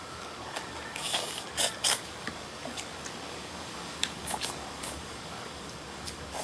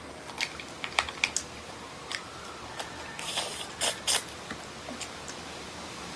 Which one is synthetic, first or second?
first